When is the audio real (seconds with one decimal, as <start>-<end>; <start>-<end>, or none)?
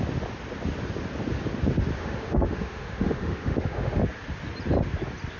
0.0-2.0; 4.0-5.4